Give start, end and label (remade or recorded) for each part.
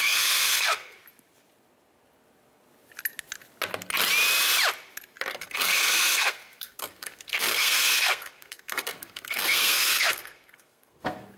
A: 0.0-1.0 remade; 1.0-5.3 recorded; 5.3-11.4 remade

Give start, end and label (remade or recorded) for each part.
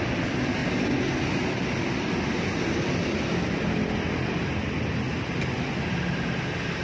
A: 0.0-6.8 recorded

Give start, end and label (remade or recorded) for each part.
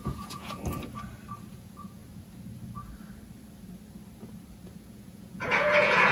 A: 0.0-0.6 remade; 0.6-1.5 recorded; 1.5-2.0 remade; 2.0-4.8 recorded; 4.8-6.1 remade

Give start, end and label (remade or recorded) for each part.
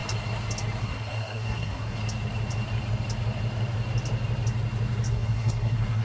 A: 0.0-0.8 recorded; 0.8-2.0 remade; 2.0-5.1 recorded; 5.1-6.0 remade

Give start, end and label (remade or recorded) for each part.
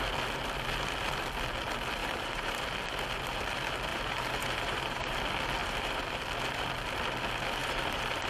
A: 0.0-2.0 recorded; 2.0-2.6 remade; 2.6-3.9 recorded; 3.9-5.1 remade; 5.1-5.6 recorded; 5.6-6.1 remade; 6.1-7.6 recorded; 7.6-8.3 remade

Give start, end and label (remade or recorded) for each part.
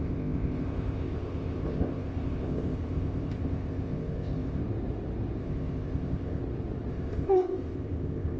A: 0.0-4.6 remade; 4.6-5.4 recorded; 5.4-6.4 remade; 6.4-6.9 recorded; 6.9-8.4 remade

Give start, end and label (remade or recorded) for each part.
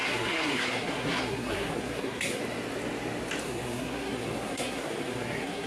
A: 0.0-2.4 remade; 2.4-3.4 recorded; 3.4-5.7 remade